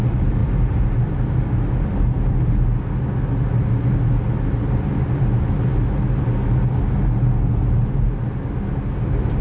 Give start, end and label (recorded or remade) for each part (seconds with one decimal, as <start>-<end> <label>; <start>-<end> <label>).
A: 0.0-9.4 recorded